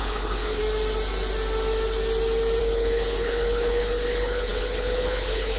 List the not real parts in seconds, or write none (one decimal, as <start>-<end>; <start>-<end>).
0.0-0.6; 2.6-5.6